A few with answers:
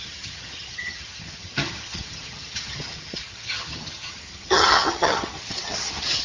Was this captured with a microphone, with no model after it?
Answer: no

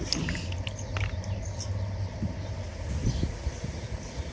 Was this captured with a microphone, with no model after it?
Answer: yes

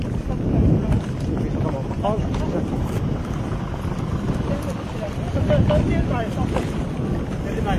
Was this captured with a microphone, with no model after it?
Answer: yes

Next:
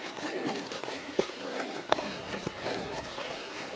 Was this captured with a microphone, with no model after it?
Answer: no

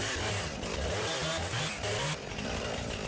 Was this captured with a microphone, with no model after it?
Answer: yes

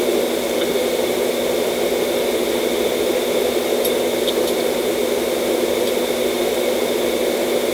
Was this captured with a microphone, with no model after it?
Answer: yes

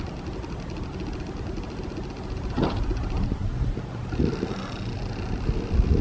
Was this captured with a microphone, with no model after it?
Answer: yes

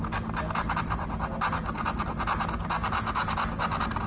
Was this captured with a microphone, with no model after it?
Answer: yes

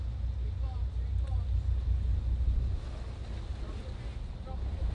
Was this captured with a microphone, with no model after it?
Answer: yes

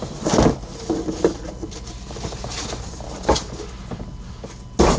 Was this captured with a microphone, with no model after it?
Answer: yes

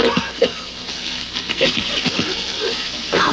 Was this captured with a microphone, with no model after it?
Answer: no